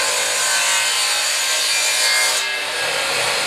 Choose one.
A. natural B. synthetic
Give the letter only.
A